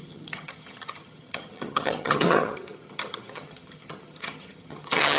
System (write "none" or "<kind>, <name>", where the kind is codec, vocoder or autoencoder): vocoder, HiFi-GAN